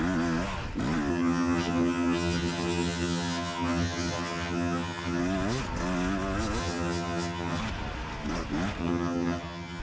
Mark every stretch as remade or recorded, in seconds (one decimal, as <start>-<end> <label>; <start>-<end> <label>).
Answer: 0.0-1.1 recorded; 1.1-5.2 remade; 5.2-6.6 recorded; 6.6-7.6 remade; 7.6-8.8 recorded; 8.8-9.8 remade

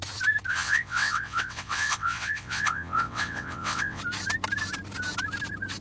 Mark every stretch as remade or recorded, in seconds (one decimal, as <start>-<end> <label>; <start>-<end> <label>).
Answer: 0.0-0.5 recorded; 0.5-4.0 remade; 4.0-5.8 recorded

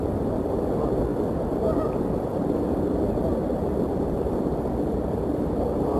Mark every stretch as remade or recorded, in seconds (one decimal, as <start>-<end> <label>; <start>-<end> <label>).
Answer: 0.0-6.0 recorded

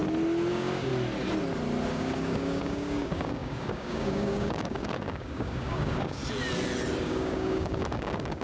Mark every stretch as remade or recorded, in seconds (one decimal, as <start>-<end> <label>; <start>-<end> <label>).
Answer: 0.0-0.5 recorded; 0.5-0.9 remade; 0.9-1.9 recorded; 1.9-6.2 remade; 6.2-7.0 recorded; 7.0-8.4 remade

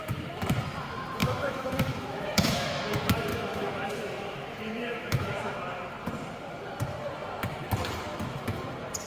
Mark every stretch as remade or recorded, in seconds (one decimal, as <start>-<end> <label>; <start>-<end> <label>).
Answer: 0.0-1.2 recorded; 1.2-2.8 remade; 2.8-3.3 recorded; 3.3-5.5 remade; 5.5-9.1 recorded

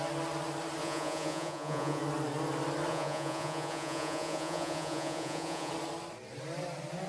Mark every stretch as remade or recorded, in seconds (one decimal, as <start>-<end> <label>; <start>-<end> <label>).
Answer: 0.0-0.8 recorded; 0.8-2.0 remade; 2.0-2.9 recorded; 2.9-5.7 remade; 5.7-7.1 recorded

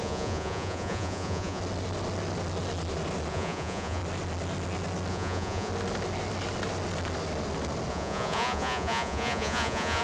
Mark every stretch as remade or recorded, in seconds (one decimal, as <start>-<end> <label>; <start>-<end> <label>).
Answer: 0.0-1.6 remade; 1.6-3.3 recorded; 3.3-4.0 remade; 4.0-5.1 recorded; 5.1-5.7 remade; 5.7-7.9 recorded; 7.9-10.0 remade

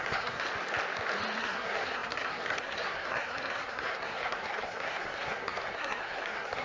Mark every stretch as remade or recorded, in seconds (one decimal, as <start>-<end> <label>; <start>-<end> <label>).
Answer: 0.0-0.5 remade; 0.5-1.4 recorded; 1.4-6.6 remade